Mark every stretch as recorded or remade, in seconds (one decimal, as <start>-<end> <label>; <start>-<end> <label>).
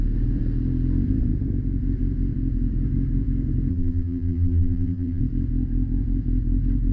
0.0-3.7 recorded; 3.7-5.2 remade; 5.2-6.9 recorded